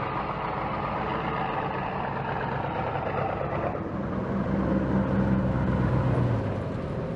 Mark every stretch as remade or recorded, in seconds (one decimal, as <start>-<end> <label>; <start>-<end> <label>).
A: 0.0-7.2 recorded